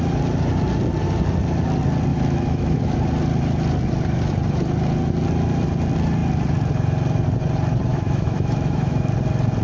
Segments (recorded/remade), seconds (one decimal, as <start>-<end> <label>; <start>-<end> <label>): 0.0-2.1 recorded; 2.1-2.8 remade; 2.8-7.9 recorded; 7.9-9.1 remade; 9.1-9.6 recorded